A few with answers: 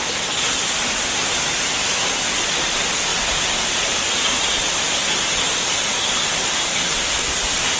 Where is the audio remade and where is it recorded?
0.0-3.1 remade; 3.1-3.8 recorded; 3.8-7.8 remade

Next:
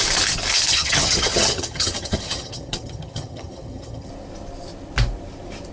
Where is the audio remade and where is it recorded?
0.0-0.7 recorded; 0.7-4.1 remade; 4.1-5.7 recorded

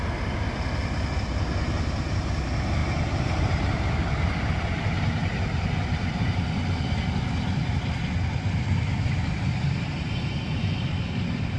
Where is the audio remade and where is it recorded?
0.0-11.6 recorded

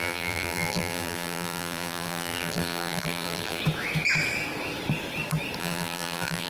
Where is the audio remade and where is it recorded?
0.0-3.6 remade; 3.6-5.6 recorded; 5.6-6.5 remade

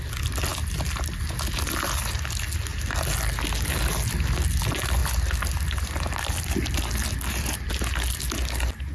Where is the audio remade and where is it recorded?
0.0-0.5 recorded; 0.5-1.2 remade; 1.2-5.0 recorded; 5.0-7.7 remade; 7.7-8.9 recorded

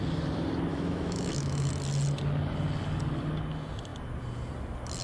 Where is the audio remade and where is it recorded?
0.0-0.7 recorded; 0.7-1.7 remade; 1.7-5.0 recorded

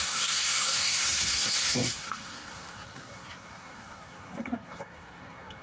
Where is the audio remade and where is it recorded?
0.0-5.6 remade